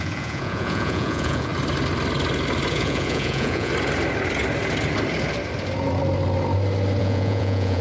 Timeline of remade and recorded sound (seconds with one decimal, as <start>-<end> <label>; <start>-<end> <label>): 0.0-1.5 remade; 1.5-2.7 recorded; 2.7-3.7 remade; 3.7-7.0 recorded; 7.0-7.8 remade